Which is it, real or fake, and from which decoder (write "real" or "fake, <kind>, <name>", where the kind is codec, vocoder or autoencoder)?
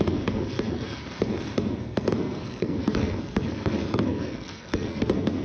fake, codec, SNAC